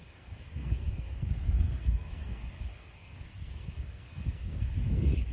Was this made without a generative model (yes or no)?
no